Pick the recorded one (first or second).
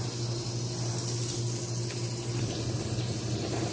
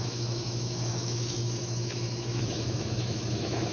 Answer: first